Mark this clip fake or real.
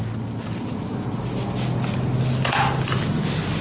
real